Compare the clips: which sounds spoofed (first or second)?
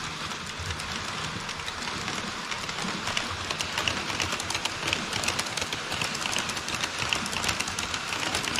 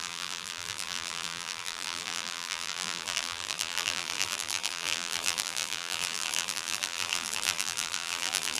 second